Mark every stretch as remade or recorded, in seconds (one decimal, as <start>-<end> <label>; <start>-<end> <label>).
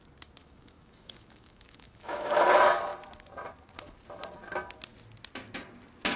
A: 0.0-0.4 recorded; 0.4-2.4 remade; 2.4-6.2 recorded